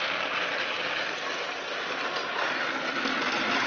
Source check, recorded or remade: recorded